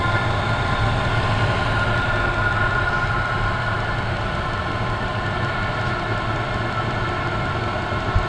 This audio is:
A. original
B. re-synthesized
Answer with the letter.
A